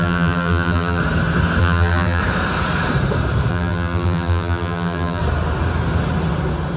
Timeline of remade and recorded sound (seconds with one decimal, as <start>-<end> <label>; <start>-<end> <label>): 0.0-1.0 remade; 1.0-1.6 recorded; 1.6-2.2 remade; 2.2-3.5 recorded; 3.5-5.2 remade; 5.2-6.8 recorded